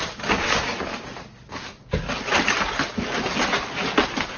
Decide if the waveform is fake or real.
real